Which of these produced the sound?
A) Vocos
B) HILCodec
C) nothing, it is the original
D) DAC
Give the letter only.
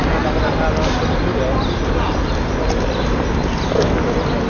C